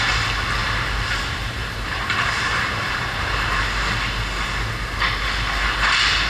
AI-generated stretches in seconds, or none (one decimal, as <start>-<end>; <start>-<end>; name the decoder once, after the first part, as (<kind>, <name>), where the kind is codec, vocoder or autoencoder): 0.6-3.5 (vocoder, BigVGAN v2)